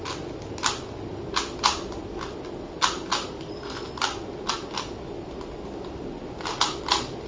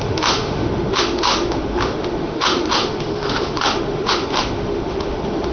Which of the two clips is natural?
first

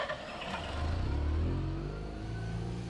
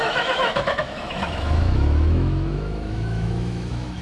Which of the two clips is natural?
first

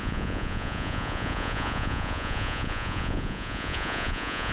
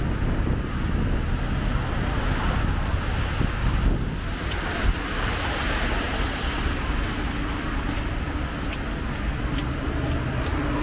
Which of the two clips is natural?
second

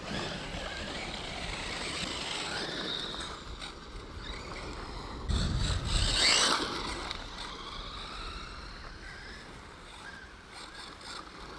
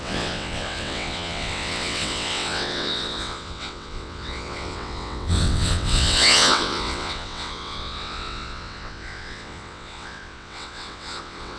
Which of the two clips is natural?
first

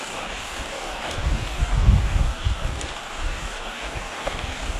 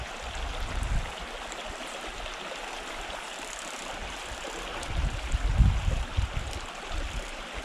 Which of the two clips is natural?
second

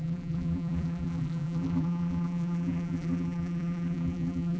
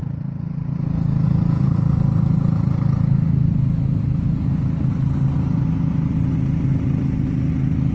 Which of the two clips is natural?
second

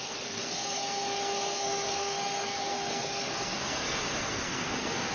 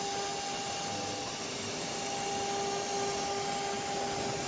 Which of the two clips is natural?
second